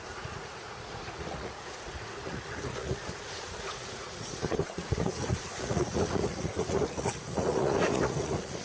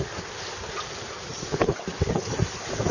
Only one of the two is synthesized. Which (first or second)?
first